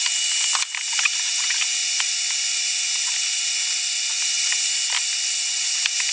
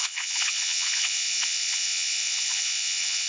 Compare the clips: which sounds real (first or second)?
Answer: first